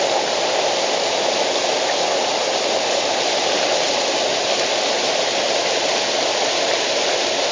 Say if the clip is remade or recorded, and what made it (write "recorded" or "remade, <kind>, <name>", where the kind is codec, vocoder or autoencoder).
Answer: recorded